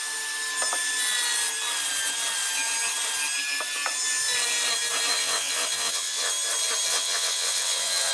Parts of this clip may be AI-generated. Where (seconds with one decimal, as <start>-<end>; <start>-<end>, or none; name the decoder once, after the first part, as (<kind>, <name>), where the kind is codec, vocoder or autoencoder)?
5.1-6.3 (vocoder, WaveNeXt); 6.9-8.1